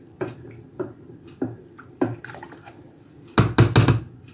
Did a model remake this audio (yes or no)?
no